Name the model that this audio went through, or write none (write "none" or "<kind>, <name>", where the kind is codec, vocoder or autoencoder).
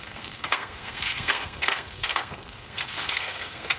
codec, SNAC